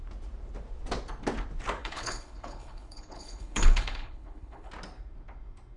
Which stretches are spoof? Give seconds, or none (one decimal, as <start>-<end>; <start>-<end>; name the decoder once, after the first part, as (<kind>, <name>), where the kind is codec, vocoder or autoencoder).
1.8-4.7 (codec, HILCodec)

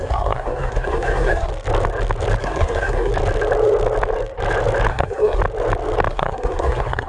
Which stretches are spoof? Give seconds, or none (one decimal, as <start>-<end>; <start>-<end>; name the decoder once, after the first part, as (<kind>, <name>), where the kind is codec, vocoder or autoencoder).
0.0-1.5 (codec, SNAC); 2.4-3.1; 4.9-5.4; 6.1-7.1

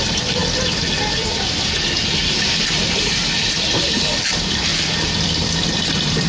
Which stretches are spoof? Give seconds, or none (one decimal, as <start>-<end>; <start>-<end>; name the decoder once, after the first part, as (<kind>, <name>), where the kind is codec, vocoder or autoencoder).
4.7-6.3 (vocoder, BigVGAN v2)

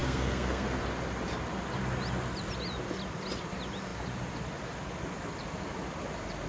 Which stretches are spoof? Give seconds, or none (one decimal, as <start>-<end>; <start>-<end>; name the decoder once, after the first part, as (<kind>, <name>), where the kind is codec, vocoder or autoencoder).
0.0-0.8 (codec, SNAC)

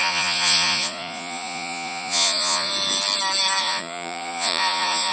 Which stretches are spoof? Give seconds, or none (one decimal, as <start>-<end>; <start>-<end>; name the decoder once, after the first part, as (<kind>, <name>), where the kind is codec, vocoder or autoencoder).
0.0-2.7 (vocoder, Vocos); 3.6-5.1

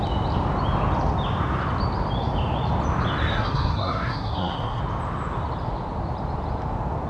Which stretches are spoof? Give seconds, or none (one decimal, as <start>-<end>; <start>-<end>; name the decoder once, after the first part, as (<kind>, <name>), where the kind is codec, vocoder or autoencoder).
3.3-4.8 (codec, SNAC)